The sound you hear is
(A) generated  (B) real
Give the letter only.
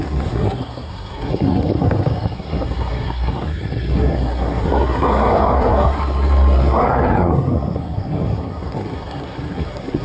A